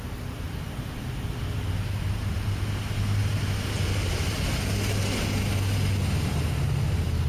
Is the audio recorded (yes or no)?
yes